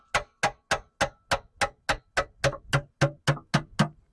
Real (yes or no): yes